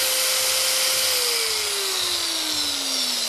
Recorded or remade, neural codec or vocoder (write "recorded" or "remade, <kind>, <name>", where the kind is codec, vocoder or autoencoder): recorded